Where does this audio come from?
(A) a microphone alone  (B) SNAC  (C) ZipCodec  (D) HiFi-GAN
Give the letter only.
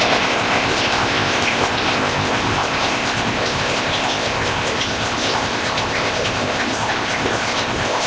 C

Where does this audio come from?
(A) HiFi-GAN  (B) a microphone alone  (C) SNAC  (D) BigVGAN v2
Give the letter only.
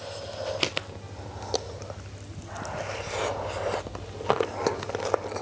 B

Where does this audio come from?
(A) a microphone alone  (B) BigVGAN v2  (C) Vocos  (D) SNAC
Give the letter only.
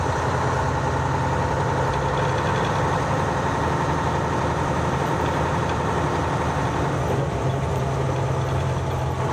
A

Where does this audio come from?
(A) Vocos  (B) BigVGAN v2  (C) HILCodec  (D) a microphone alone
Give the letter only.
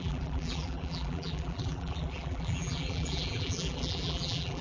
B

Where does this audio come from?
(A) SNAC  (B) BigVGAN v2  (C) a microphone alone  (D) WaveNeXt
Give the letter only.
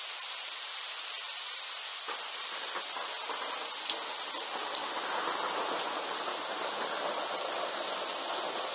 C